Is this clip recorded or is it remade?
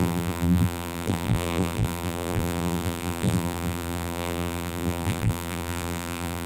remade